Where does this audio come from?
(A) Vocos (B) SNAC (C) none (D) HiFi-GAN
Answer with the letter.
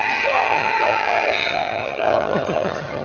D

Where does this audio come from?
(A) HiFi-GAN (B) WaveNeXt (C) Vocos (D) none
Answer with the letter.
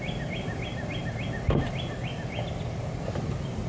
D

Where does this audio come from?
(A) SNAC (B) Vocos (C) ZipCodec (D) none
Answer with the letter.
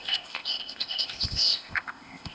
C